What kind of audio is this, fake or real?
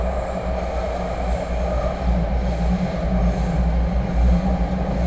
real